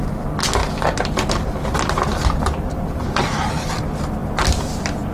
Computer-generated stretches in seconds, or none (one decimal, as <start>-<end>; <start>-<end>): none